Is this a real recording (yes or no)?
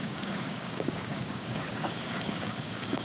no